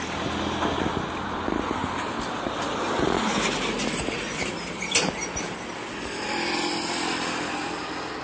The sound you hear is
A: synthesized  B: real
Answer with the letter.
B